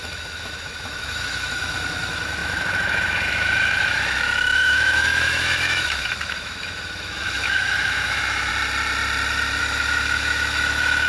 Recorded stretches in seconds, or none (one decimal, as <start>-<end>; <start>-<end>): 8.5-9.6